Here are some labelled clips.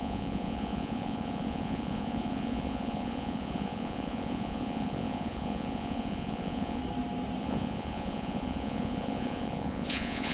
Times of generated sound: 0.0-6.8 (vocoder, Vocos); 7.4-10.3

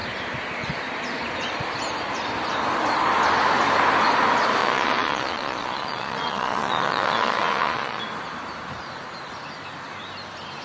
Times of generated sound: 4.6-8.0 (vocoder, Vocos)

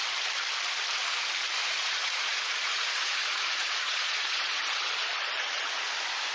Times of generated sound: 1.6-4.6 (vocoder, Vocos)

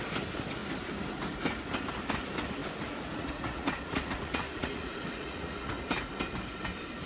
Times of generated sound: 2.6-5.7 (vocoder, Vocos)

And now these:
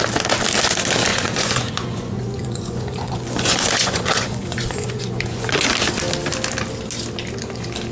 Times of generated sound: 1.1-5.7 (vocoder, Vocos)

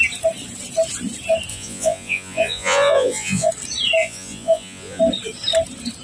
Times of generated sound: 1.5-3.5 (vocoder, Vocos); 4.0-5.0

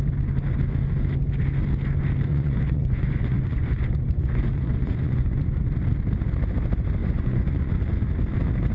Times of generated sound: 2.3-5.7 (vocoder, Vocos); 7.0-7.7

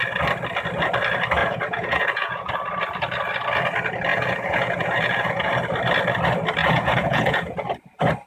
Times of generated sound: 1.4-2.5 (vocoder, Vocos); 4.1-5.5; 6.6-7.7